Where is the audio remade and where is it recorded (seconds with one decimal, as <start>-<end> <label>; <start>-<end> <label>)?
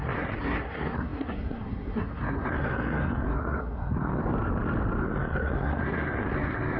0.0-4.2 remade; 4.2-5.0 recorded; 5.0-6.8 remade